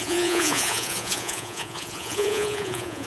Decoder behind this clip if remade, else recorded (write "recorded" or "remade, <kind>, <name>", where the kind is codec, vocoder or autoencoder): remade, vocoder, Vocos